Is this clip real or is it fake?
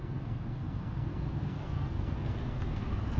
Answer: fake